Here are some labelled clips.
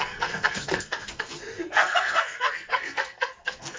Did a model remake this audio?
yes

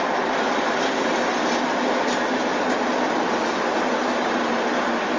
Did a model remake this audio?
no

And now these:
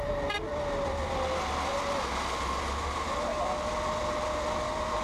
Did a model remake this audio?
no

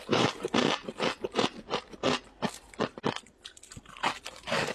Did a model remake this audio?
no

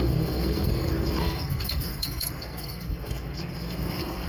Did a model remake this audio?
yes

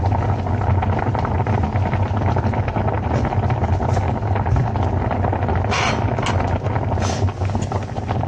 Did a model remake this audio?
no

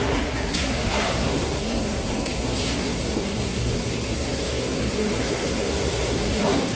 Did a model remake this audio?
yes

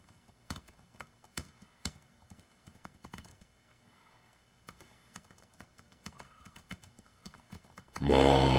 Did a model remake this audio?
yes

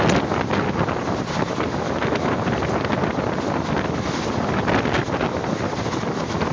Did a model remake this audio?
no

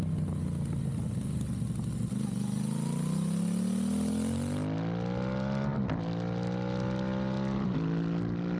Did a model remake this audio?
no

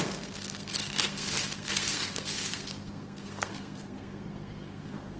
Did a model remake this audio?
yes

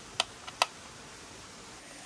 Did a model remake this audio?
no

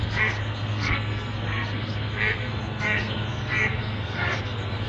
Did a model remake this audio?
yes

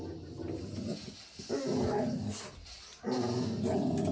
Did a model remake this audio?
no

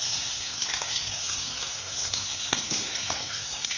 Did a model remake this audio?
yes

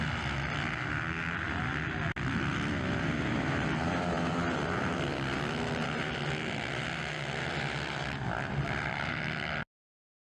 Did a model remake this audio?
no